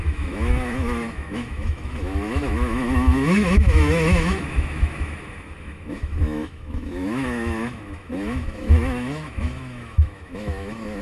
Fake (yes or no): yes